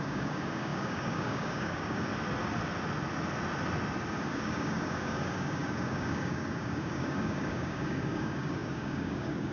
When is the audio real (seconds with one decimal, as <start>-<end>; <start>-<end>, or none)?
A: 2.1-4.1